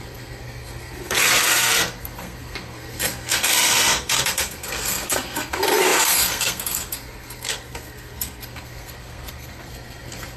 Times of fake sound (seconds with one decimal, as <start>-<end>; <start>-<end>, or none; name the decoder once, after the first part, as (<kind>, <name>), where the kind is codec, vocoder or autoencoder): 0.0-10.4 (codec, SNAC)